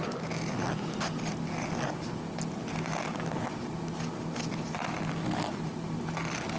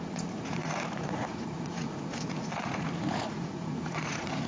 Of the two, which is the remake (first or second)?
second